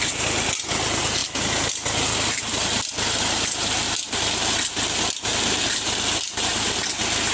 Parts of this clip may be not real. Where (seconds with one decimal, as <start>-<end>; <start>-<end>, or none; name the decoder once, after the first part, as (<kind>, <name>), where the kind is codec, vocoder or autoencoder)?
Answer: none